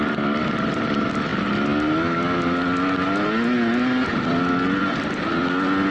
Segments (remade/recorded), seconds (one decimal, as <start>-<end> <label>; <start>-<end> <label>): 0.0-5.9 recorded